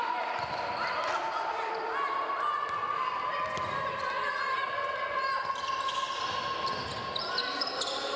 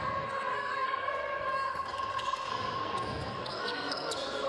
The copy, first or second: second